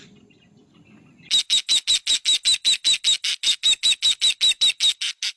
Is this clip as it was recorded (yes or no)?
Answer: yes